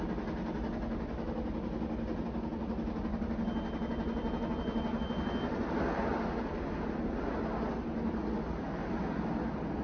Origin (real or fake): real